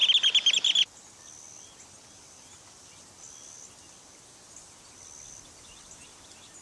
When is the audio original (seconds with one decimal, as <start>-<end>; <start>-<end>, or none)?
0.0-6.6